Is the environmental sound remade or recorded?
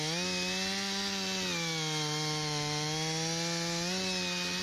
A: recorded